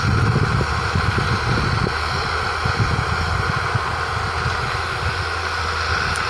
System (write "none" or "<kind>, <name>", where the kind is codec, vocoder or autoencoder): none